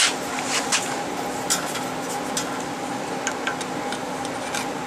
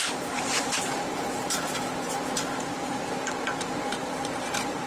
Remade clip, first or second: second